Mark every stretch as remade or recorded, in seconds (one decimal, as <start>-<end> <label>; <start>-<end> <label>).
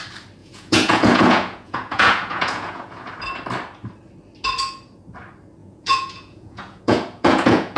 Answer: 0.0-0.4 recorded; 0.4-3.1 remade; 3.1-5.6 recorded; 5.6-7.8 remade